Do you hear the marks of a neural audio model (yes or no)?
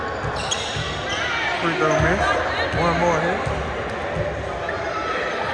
no